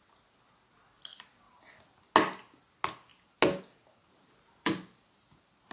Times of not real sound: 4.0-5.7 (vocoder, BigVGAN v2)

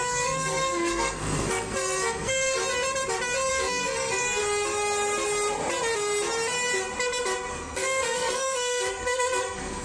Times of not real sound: 0.0-2.6 (codec, SNAC); 3.5-4.4; 7.5-9.8

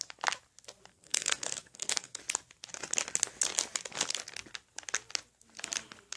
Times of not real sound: 0.9-2.2 (codec, SNAC)

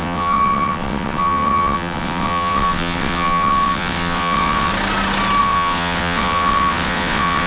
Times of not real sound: 0.0-4.7 (vocoder, WaveNeXt); 5.4-7.5

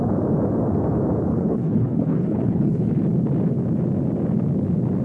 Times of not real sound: 1.3-2.9 (codec, HILCodec)

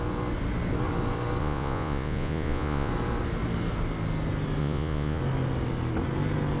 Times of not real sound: 1.4-2.9 (vocoder, Vocos); 4.6-5.2